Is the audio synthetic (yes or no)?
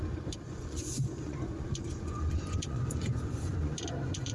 yes